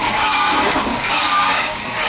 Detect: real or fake fake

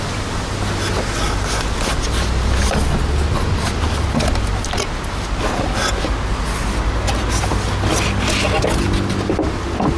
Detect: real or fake real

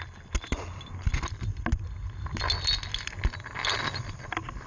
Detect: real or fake real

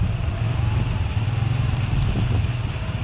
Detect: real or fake real